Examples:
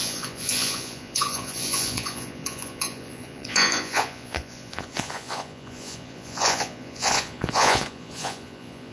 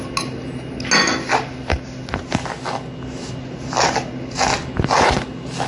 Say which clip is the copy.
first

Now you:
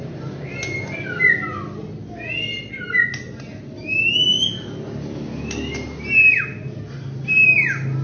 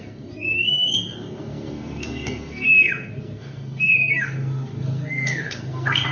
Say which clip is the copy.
second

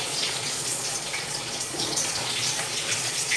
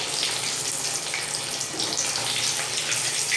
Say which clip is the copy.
first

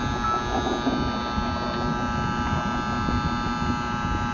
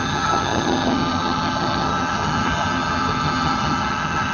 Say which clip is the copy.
second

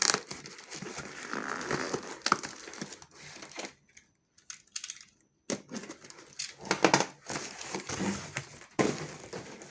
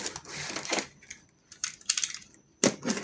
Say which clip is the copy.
second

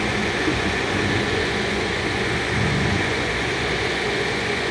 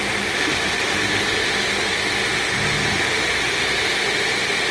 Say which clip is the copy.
first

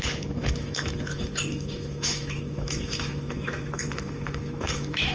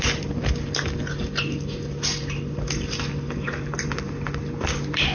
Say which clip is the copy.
first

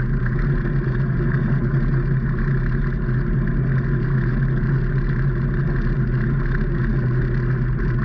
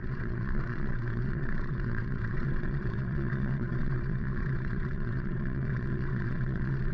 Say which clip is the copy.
second